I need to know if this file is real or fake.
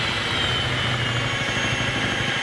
real